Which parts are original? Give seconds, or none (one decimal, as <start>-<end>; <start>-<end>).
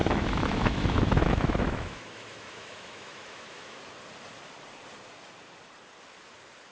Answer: 3.8-6.7